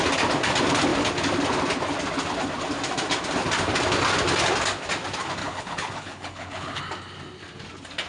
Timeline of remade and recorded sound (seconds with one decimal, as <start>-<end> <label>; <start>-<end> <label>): 0.0-5.4 recorded; 5.4-6.8 remade; 6.8-8.1 recorded